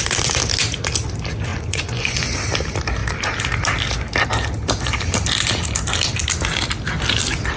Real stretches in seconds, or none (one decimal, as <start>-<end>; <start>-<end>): 0.0-1.5; 2.4-7.6